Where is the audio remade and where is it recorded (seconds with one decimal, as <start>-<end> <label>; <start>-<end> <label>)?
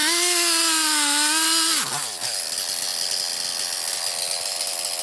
0.0-5.0 recorded